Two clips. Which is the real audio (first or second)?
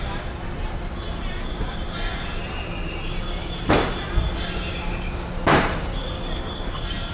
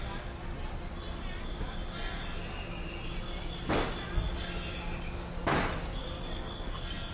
second